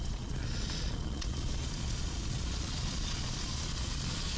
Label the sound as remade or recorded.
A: remade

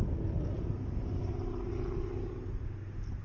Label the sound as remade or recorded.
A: recorded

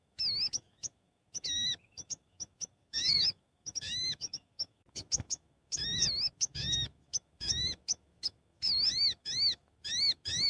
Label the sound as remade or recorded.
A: remade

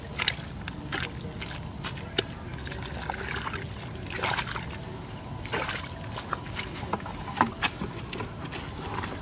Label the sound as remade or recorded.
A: recorded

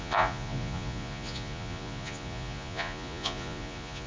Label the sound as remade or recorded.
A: remade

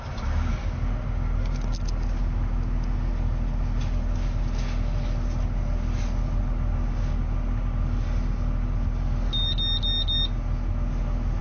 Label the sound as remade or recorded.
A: recorded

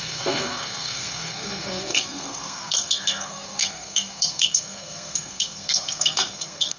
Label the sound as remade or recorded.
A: remade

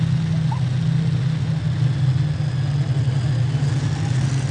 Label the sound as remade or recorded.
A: recorded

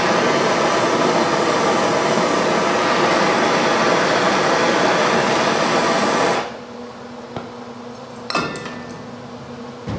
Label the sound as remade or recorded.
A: recorded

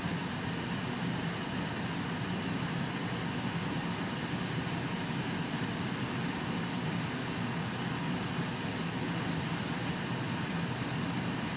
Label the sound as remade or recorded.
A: recorded